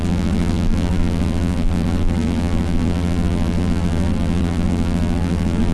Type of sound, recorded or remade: remade